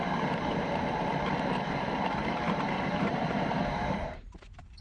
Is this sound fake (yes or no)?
yes